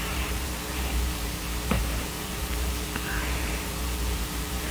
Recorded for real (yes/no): no